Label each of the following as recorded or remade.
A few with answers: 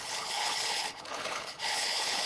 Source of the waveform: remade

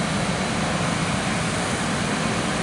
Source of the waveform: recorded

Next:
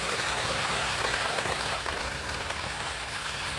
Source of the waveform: remade